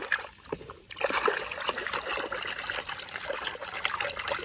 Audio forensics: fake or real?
real